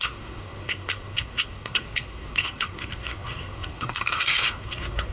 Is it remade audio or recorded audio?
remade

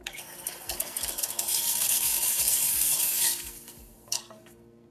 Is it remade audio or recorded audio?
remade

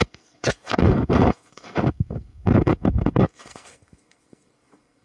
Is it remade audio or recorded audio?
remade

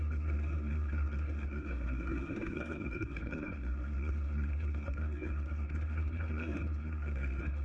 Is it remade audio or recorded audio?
remade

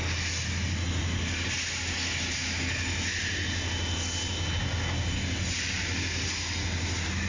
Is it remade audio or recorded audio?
recorded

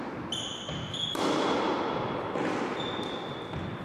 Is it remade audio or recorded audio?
recorded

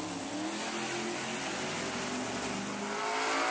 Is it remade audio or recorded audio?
recorded